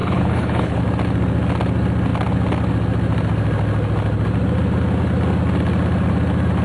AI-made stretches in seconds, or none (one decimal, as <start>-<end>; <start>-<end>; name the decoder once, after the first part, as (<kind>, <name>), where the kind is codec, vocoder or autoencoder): 0.0-0.8 (codec, HILCodec)